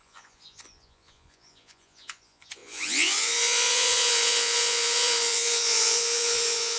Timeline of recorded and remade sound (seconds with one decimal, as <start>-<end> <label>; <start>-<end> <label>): 0.0-6.8 remade